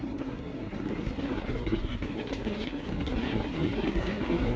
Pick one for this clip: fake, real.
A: fake